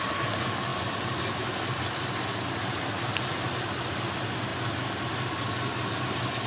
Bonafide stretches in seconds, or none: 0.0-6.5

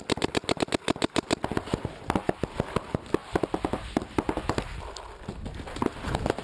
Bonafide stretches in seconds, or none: 0.0-6.4

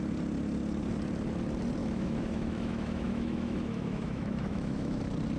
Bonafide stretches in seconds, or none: 0.0-1.8; 5.0-5.4

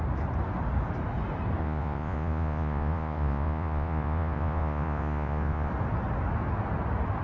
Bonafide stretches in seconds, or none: 0.0-1.6; 5.7-7.2